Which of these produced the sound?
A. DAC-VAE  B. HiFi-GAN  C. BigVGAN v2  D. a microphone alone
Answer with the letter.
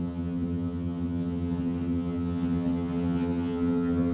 B